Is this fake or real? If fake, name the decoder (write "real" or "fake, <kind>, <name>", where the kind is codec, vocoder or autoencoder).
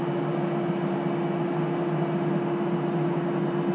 real